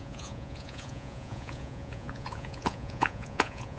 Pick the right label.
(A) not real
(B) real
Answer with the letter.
A